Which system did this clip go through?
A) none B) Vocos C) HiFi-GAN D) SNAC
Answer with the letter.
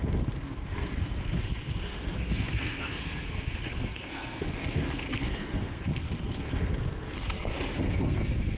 D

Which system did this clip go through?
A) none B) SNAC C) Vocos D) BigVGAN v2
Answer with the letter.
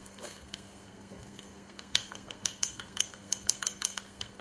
B